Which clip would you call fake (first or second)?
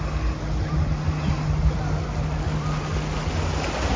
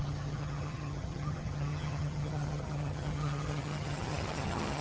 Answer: second